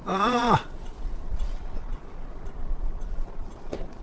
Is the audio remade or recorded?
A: remade